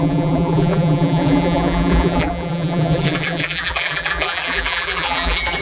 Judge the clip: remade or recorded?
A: remade